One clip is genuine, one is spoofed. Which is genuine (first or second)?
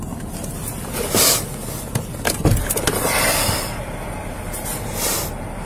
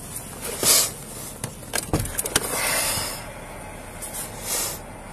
second